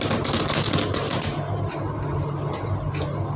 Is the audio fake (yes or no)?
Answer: no